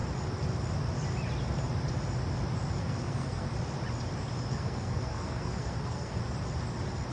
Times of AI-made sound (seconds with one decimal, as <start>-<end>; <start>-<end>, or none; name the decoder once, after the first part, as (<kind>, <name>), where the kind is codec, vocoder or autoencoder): 2.8-3.5 (codec, SNAC); 4.5-6.2